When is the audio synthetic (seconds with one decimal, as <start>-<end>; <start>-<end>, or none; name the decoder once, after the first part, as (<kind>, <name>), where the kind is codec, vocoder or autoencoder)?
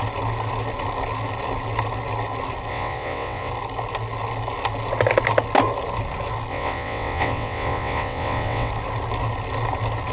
2.7-3.5 (vocoder, WaveNeXt); 6.5-8.7